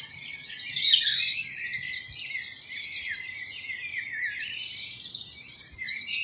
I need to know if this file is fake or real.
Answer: real